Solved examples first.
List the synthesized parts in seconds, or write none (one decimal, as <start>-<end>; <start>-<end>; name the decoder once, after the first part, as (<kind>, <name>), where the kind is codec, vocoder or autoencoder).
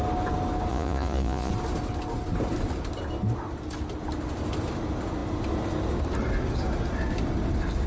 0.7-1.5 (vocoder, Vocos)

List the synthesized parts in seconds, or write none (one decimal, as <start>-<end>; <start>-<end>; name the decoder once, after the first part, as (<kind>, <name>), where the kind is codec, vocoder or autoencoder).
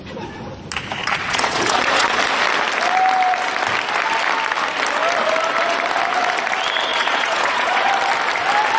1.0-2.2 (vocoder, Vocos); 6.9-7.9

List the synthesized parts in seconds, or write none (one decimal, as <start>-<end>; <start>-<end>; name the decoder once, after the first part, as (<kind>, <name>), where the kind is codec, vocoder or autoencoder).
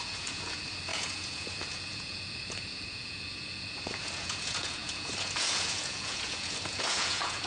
0.0-7.5 (vocoder, Vocos)